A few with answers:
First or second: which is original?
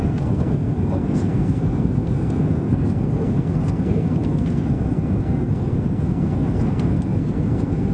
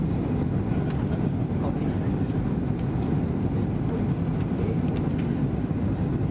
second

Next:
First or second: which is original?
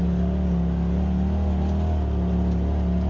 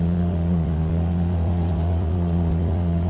first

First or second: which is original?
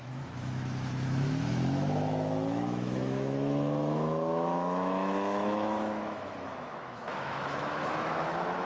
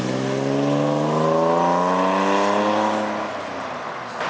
second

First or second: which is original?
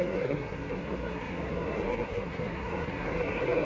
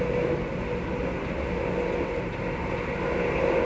second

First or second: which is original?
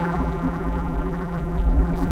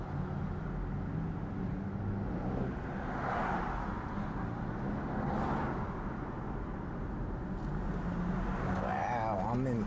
second